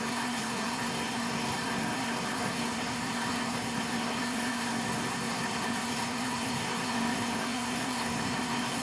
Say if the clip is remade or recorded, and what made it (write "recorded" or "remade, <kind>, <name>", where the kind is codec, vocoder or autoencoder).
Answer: remade, codec, SNAC